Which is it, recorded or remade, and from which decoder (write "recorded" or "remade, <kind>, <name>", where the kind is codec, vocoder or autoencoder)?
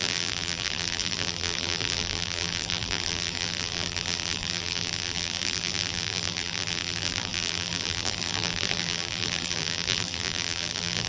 remade, vocoder, BigVGAN v2